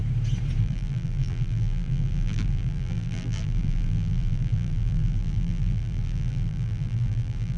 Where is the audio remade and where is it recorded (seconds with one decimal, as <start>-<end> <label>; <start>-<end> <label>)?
0.0-0.6 recorded; 0.6-7.6 remade